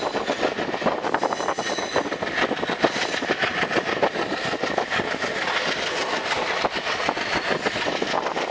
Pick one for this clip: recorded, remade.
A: recorded